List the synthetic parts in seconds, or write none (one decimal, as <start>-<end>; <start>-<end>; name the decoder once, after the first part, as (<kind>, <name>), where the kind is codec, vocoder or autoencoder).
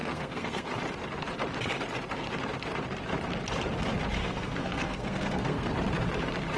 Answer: 0.0-0.8 (codec, SNAC); 4.2-5.7